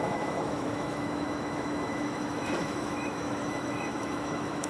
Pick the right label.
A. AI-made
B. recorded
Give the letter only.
A